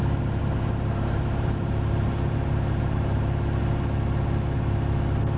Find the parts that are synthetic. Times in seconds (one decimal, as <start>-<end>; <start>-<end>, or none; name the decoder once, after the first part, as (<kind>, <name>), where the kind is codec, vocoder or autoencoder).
0.4-3.6 (vocoder, BigVGAN v2)